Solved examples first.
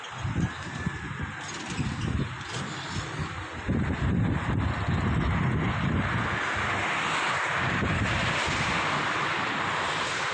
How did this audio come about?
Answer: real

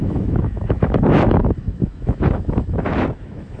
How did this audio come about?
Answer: fake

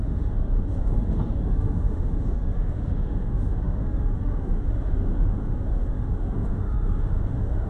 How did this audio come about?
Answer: fake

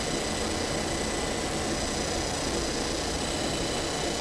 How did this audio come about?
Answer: real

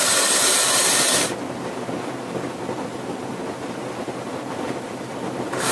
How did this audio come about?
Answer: real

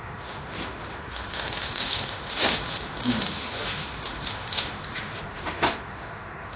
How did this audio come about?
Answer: fake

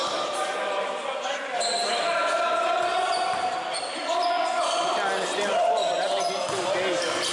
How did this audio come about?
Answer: real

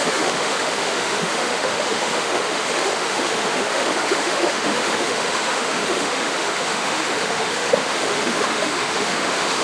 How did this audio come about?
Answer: fake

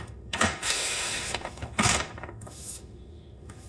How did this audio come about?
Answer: fake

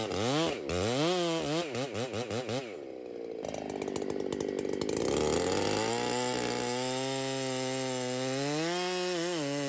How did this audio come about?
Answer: real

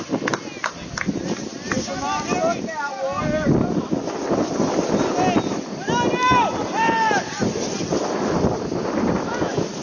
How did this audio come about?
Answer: real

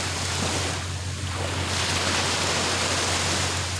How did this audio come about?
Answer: real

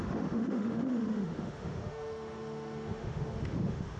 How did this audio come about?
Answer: fake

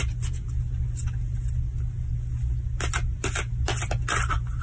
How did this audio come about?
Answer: real